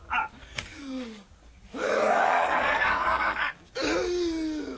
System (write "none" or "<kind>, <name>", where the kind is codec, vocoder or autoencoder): codec, DAC